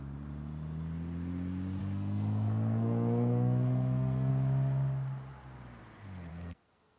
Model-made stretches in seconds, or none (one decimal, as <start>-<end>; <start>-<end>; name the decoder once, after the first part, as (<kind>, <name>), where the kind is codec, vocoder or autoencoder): 1.8-4.3 (codec, SNAC); 6.3-7.0